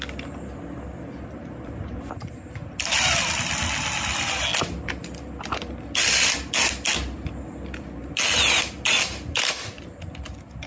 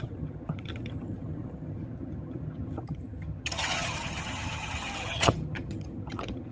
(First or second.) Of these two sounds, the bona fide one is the first